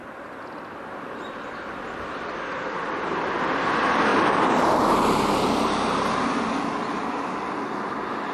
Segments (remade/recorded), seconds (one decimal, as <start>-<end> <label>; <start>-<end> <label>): 0.0-4.1 recorded; 4.1-5.0 remade; 5.0-8.3 recorded